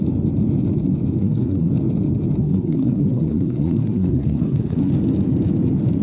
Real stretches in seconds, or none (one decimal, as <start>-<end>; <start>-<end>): 0.0-1.2; 1.7-2.4; 4.9-6.0